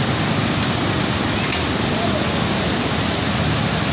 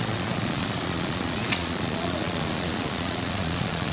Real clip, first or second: first